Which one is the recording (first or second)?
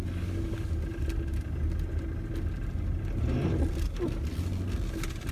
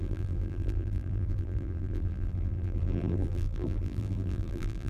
first